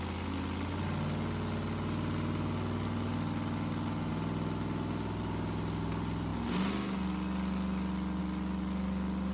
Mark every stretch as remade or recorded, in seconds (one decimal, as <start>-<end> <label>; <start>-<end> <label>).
0.0-9.3 recorded